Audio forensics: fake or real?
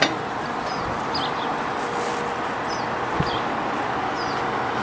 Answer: real